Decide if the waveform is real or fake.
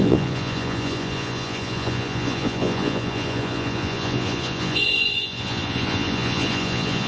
fake